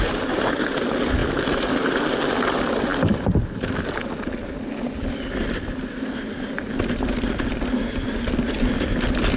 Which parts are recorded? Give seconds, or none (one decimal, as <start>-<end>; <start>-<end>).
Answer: 0.0-9.4